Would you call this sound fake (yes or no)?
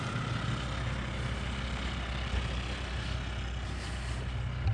no